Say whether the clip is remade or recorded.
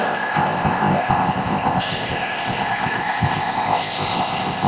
remade